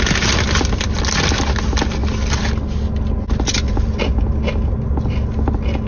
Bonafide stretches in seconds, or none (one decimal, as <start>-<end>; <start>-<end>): 0.0-5.9